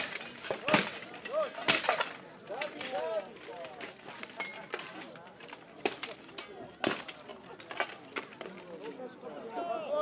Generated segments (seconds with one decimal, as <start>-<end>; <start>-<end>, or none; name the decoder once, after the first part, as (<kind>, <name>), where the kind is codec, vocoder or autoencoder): none